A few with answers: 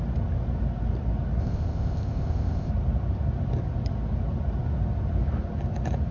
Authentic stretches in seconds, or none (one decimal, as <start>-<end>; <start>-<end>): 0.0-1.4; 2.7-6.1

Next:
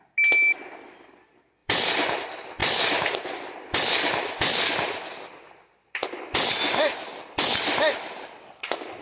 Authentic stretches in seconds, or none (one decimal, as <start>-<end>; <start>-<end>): 0.0-1.6; 2.2-9.0

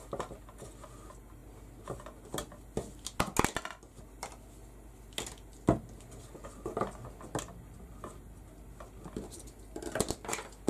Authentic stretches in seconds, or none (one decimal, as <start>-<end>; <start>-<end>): 0.0-10.7

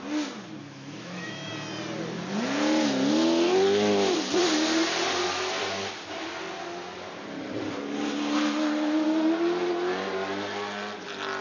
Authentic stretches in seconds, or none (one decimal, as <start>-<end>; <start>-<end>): 0.0-0.6; 1.5-11.4